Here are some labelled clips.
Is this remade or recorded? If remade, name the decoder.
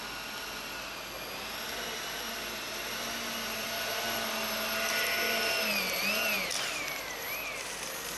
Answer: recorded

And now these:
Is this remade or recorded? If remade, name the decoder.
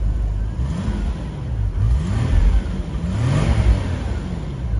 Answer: recorded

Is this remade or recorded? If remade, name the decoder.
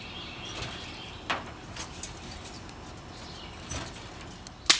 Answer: recorded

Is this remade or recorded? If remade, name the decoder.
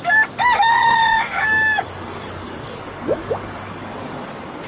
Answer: remade, codec, DAC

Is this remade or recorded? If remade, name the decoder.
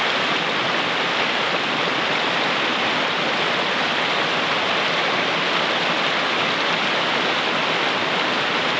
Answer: recorded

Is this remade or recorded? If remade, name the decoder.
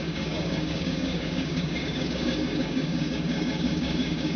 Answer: remade, codec, DAC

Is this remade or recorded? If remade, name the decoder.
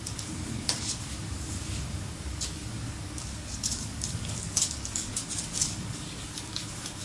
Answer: remade, codec, DAC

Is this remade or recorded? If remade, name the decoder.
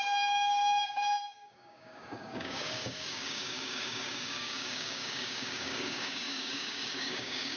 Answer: remade, codec, DAC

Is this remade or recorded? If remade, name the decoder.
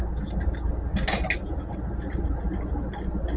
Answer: recorded